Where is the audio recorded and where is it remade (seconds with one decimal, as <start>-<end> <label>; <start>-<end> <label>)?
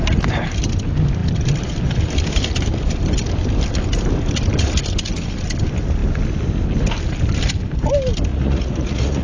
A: 0.0-8.3 recorded; 8.3-9.2 remade